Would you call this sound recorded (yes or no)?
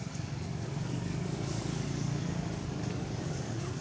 no